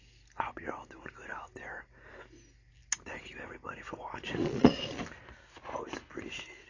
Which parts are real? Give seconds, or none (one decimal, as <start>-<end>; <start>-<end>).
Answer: 0.0-4.4; 5.0-6.7